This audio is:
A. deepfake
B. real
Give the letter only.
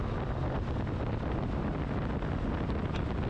B